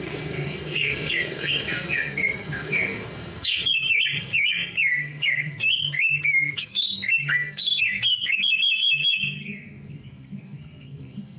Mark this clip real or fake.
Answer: fake